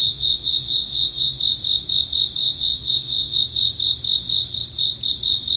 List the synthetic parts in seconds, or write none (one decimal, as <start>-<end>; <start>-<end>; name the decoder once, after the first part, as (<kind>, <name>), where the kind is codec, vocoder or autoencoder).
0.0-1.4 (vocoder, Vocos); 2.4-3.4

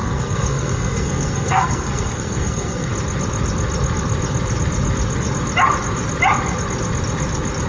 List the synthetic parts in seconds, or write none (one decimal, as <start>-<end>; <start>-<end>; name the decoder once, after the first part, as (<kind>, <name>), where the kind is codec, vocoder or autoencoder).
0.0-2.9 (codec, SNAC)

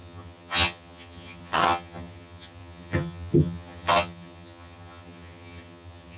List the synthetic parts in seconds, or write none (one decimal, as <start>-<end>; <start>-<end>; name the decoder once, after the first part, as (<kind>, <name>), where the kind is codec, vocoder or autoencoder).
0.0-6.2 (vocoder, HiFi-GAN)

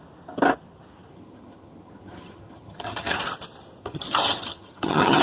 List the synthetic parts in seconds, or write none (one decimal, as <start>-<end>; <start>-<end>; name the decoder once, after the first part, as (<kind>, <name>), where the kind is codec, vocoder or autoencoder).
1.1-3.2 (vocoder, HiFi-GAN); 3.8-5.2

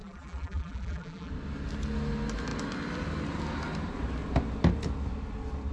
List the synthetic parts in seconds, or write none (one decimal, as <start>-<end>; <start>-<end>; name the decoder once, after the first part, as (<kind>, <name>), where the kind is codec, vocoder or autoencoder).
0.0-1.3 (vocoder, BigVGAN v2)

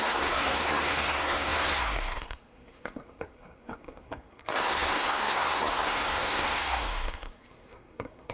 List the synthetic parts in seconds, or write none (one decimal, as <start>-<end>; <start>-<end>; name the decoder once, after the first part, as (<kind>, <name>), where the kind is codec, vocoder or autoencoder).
0.0-8.3 (codec, SNAC)

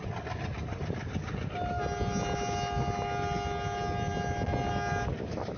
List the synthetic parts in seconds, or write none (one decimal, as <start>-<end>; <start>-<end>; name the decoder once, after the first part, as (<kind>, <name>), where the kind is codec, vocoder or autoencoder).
none

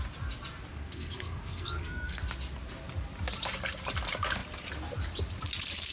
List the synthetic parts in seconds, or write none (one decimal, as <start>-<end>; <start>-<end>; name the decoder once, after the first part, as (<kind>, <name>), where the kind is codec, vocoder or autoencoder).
0.7-2.2 (codec, SNAC)